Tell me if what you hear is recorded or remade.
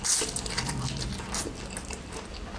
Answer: recorded